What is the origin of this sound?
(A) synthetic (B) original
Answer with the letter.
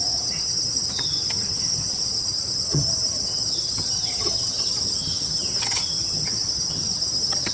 A